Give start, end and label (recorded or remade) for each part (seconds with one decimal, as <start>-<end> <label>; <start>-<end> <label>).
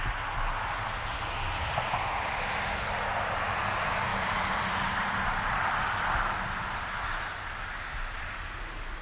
0.0-4.1 recorded; 4.1-6.4 remade; 6.4-9.0 recorded